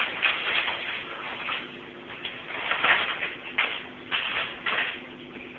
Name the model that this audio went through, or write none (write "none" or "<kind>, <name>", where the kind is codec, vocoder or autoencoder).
none